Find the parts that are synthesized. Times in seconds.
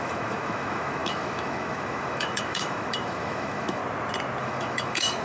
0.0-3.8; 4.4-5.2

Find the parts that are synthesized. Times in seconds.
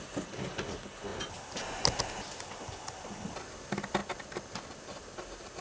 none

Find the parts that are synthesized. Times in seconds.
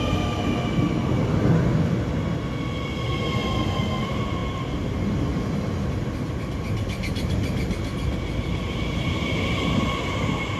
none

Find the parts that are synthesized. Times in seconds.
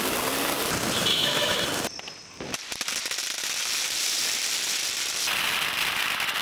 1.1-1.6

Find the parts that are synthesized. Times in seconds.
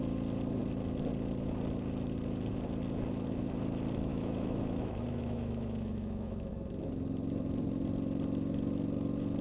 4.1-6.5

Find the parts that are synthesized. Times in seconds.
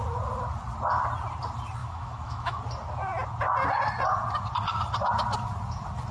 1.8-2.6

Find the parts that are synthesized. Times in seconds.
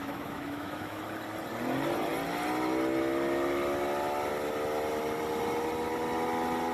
0.0-1.0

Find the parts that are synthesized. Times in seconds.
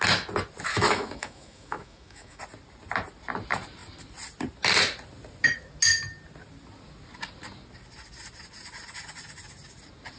0.7-2.4